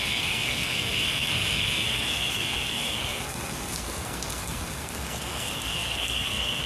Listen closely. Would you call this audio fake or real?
fake